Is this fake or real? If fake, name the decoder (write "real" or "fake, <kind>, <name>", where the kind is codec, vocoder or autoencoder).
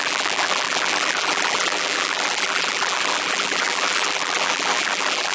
fake, vocoder, BigVGAN v2